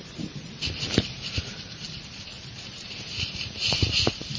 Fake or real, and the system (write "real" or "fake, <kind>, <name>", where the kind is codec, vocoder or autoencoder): fake, vocoder, BigVGAN v2